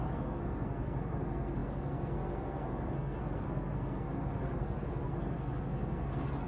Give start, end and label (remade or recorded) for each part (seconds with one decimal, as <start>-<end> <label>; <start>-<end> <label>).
0.0-6.5 remade